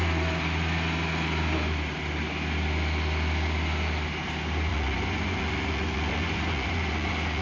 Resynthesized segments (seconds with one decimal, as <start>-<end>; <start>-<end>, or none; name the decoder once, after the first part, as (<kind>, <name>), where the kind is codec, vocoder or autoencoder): 4.7-7.4 (vocoder, Vocos)